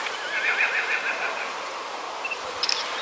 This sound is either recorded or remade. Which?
remade